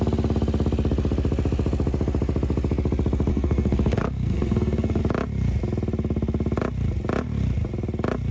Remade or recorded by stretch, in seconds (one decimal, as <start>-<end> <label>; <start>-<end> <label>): 0.0-3.3 recorded; 3.3-5.0 remade; 5.0-8.3 recorded